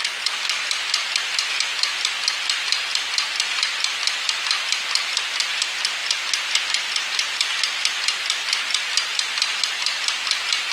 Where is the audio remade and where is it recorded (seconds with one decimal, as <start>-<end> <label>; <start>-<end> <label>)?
0.0-10.7 recorded